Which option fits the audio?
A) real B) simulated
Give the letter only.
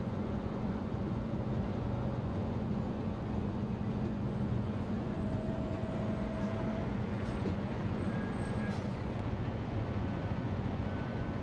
B